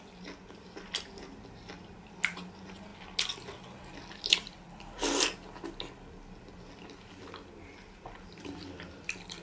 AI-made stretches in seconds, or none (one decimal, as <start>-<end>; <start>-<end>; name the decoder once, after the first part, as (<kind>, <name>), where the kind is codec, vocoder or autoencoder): none